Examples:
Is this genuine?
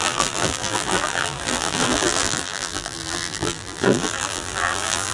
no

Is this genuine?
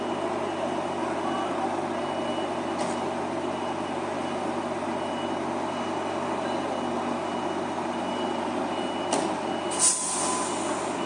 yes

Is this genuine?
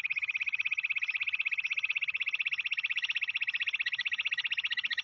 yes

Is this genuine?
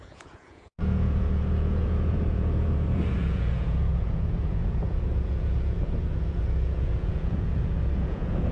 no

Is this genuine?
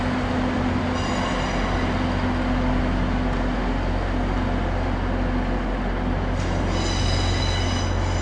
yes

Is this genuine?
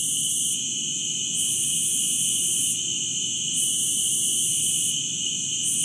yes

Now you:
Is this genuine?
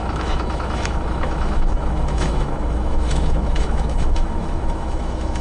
no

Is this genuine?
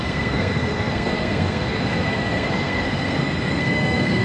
no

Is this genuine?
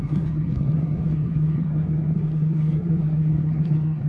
no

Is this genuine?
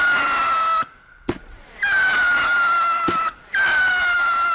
yes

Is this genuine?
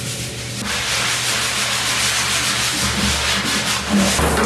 yes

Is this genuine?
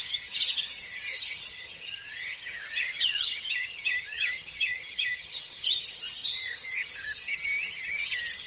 no